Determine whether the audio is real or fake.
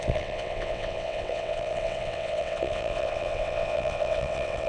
fake